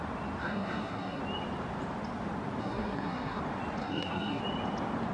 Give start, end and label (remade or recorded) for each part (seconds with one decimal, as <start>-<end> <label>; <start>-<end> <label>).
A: 0.0-0.4 recorded; 0.4-1.2 remade; 1.2-2.6 recorded; 2.6-3.4 remade; 3.4-3.8 recorded; 3.8-4.4 remade; 4.4-5.1 recorded